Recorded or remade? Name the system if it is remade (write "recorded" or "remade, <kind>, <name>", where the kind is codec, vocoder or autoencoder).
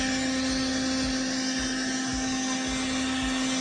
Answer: recorded